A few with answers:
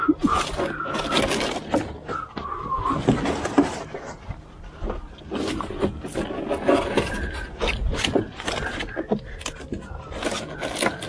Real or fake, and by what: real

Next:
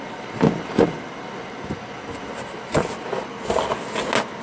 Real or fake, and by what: real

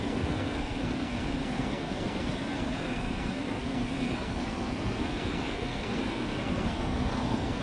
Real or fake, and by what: fake, codec, SNAC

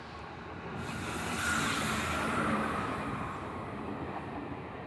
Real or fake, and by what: real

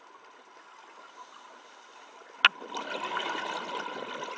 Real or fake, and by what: real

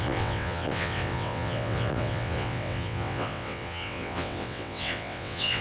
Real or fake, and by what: fake, vocoder, WaveNeXt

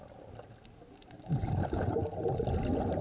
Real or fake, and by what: real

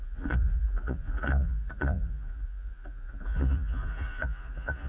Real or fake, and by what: fake, vocoder, Vocos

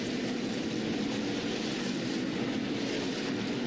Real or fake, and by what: fake, vocoder, BigVGAN v2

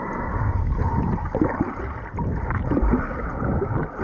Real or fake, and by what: real